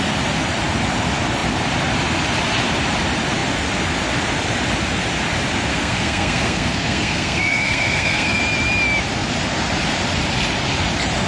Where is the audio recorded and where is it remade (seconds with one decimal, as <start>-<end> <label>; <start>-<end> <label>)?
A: 0.0-5.7 recorded; 5.7-8.4 remade; 8.4-11.3 recorded